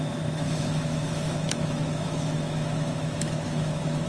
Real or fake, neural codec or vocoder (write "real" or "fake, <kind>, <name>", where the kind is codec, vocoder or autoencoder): fake, autoencoder, DAC-VAE